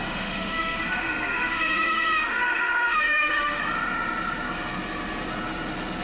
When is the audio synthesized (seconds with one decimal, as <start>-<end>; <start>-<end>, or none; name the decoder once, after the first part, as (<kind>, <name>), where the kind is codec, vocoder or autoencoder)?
0.0-3.6 (autoencoder, DAC-VAE)